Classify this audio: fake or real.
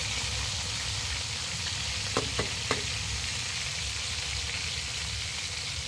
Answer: real